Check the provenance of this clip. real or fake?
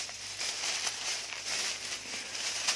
real